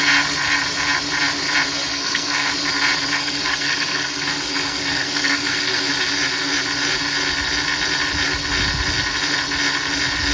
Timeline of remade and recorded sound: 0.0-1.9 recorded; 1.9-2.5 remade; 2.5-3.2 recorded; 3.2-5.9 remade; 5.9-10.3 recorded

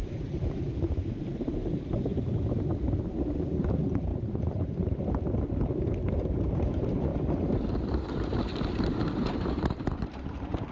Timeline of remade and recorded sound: 0.0-1.6 remade; 1.6-3.6 recorded; 3.6-7.1 remade; 7.1-7.9 recorded; 7.9-10.7 remade

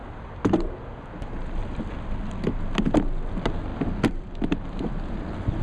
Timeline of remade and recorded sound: 0.0-3.7 recorded; 3.7-5.6 remade